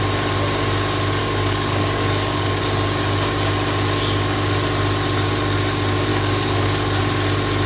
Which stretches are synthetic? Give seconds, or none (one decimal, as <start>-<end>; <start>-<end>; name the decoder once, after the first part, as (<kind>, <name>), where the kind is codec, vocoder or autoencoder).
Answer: 1.2-2.6 (codec, DAC); 6.1-7.0